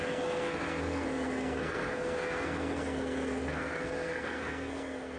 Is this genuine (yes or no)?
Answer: no